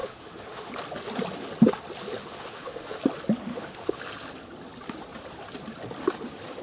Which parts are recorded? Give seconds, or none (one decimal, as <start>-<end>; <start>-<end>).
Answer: 0.7-2.2; 3.0-3.5; 4.0-6.6